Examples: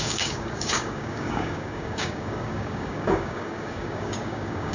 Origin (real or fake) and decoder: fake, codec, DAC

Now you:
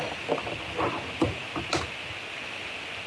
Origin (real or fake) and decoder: real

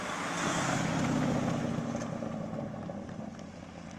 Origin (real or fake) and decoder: real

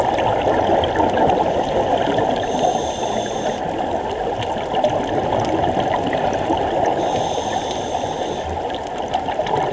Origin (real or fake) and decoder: real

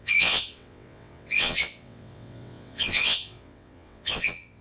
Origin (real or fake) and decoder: fake, vocoder, WaveNeXt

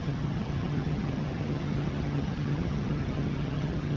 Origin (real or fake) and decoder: fake, vocoder, HiFi-GAN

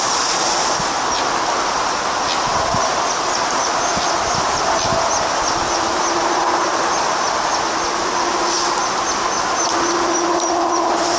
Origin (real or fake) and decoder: real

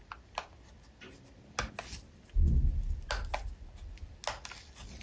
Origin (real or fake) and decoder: real